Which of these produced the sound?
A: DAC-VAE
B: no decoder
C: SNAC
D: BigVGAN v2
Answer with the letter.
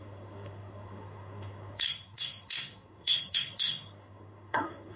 C